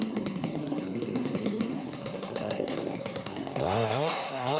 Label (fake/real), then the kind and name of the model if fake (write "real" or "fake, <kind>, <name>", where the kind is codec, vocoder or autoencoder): fake, codec, SNAC